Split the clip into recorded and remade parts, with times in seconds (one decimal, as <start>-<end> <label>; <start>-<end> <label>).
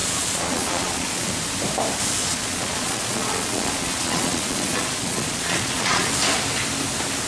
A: 0.0-1.3 remade; 1.3-2.2 recorded; 2.2-6.1 remade; 6.1-7.3 recorded